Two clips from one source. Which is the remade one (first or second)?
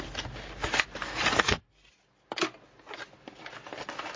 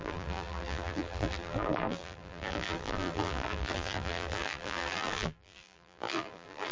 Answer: second